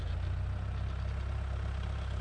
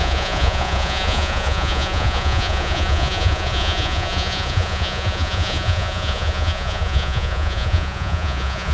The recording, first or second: first